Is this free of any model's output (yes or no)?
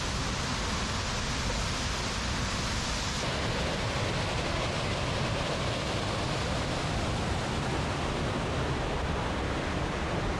yes